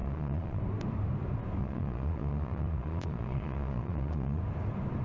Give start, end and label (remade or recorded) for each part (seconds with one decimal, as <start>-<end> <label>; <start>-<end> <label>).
0.0-0.6 remade; 0.6-1.6 recorded; 1.6-4.4 remade; 4.4-5.0 recorded